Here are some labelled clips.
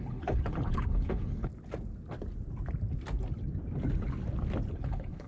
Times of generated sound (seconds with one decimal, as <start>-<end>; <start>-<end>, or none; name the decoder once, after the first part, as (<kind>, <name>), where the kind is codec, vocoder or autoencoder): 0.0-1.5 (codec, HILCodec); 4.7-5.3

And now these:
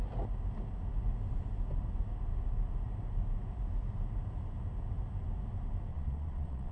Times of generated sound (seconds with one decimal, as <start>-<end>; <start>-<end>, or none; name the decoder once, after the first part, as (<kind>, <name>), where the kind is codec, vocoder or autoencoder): 5.9-6.7 (vocoder, Vocos)

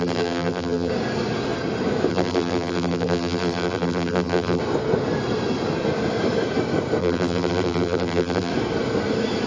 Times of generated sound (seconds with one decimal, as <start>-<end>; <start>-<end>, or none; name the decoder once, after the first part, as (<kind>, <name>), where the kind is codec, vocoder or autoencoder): 0.0-0.9 (vocoder, BigVGAN v2); 2.1-4.6; 7.0-8.5

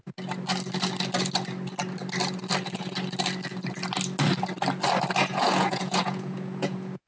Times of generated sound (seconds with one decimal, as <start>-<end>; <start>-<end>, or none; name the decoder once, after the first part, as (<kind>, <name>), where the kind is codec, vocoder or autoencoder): 5.2-7.1 (vocoder, Vocos)

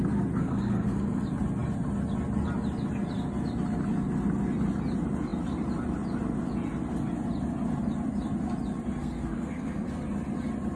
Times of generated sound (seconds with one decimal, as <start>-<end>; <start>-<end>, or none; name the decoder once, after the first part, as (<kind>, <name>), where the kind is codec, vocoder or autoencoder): 0.4-1.2 (codec, SNAC); 9.0-9.9